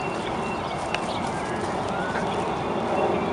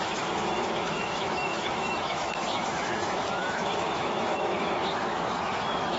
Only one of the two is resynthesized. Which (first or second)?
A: second